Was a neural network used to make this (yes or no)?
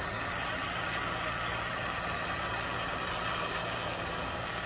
no